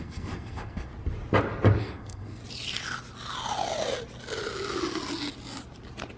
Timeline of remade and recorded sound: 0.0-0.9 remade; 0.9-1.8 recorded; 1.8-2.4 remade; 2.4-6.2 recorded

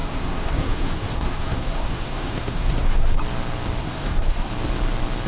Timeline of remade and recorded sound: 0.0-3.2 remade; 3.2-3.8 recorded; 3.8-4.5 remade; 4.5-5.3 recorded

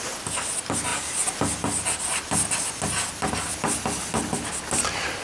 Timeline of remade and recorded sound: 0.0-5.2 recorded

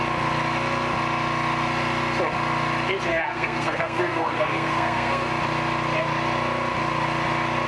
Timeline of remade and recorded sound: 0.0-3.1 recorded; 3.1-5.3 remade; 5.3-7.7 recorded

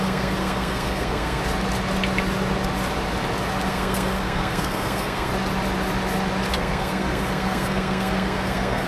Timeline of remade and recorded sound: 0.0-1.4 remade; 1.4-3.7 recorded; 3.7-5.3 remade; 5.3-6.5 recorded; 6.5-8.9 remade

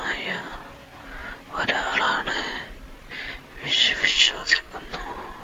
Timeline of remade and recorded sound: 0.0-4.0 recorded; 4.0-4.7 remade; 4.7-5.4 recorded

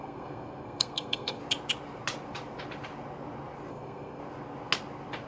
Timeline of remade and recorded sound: 0.0-1.4 remade; 1.4-3.7 recorded; 3.7-4.2 remade; 4.2-5.3 recorded

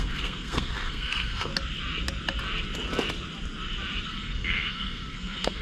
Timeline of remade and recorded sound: 0.0-1.5 remade; 1.5-4.1 recorded; 4.1-5.6 remade